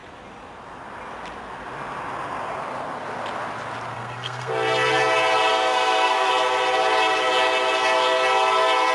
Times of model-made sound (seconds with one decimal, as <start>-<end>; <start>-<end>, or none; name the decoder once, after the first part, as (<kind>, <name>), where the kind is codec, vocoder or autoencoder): 3.9-4.5 (codec, SNAC); 5.5-6.3